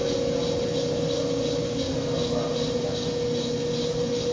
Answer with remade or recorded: recorded